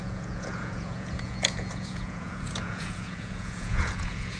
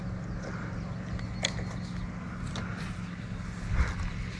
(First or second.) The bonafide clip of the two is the second